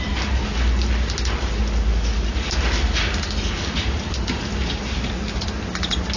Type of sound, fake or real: real